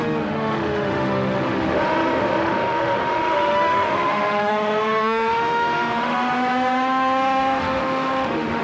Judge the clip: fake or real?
fake